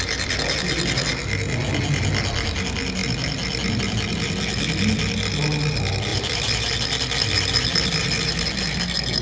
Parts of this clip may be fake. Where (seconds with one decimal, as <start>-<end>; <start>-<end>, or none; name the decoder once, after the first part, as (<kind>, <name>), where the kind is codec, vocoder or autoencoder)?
6.1-6.7 (vocoder, BigVGAN v2)